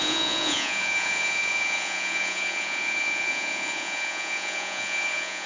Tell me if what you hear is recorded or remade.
remade